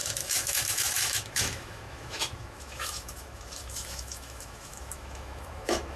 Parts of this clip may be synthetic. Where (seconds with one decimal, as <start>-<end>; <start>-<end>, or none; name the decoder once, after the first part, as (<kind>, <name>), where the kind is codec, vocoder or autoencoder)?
0.0-6.0 (autoencoder, DAC-VAE)